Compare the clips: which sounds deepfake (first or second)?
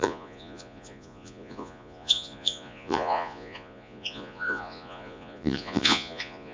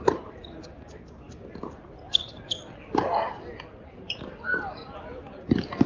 first